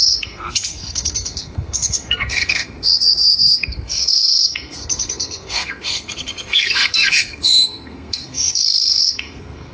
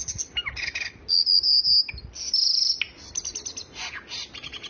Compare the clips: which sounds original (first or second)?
second